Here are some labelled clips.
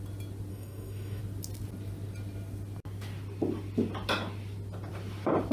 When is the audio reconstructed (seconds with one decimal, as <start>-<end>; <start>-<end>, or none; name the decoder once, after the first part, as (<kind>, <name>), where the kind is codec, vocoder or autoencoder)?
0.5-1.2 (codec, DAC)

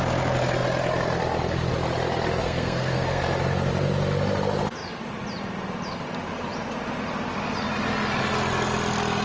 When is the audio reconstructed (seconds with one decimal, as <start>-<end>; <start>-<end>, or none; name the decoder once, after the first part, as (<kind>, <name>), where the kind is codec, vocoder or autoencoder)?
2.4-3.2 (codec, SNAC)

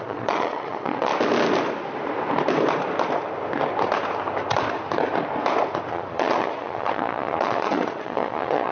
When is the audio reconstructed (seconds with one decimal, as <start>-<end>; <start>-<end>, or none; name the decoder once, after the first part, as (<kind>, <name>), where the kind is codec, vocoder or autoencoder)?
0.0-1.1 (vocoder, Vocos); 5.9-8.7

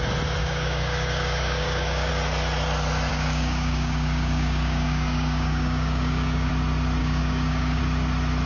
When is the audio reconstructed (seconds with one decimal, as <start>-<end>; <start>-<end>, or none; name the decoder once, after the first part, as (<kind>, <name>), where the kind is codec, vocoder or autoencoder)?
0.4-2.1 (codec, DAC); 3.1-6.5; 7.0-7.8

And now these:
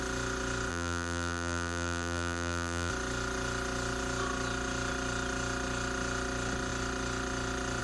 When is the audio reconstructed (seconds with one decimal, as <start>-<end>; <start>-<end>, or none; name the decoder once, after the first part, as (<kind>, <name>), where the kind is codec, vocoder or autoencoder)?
0.7-2.9 (vocoder, BigVGAN v2)

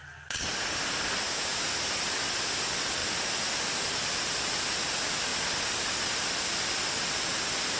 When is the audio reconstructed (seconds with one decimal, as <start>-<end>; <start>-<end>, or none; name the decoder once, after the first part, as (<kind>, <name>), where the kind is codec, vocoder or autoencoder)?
none